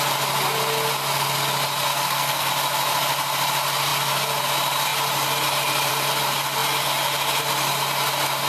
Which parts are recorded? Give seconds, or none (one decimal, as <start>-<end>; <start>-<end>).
0.0-1.9; 2.5-8.5